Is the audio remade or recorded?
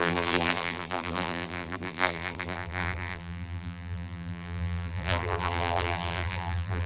remade